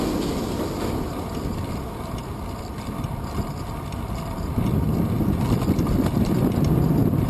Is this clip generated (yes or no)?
no